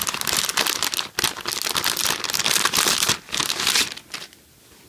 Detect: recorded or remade recorded